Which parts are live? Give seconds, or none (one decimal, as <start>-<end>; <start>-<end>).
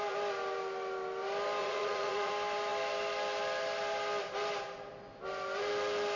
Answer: 0.0-1.6; 2.3-6.2